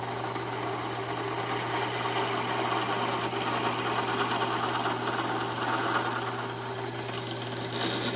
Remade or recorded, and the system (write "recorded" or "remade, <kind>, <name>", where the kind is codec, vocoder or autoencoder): recorded